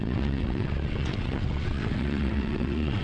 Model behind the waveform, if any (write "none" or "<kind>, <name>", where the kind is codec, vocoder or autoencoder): vocoder, WaveNeXt